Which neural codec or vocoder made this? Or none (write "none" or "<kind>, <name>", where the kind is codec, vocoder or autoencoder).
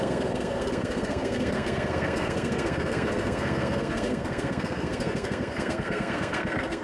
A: codec, SNAC